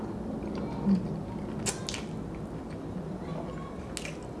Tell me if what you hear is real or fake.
real